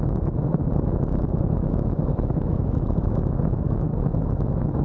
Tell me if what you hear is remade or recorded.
remade